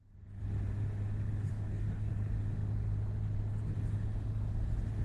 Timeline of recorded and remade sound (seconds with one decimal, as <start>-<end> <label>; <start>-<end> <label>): 0.0-1.5 recorded; 1.5-2.1 remade; 2.1-5.0 recorded